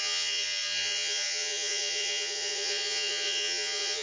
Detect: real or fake fake